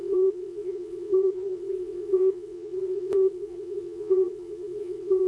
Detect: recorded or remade remade